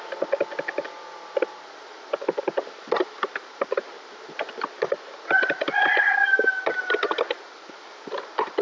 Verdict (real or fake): real